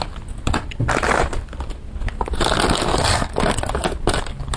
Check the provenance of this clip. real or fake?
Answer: real